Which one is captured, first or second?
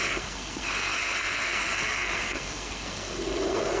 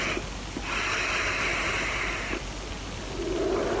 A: second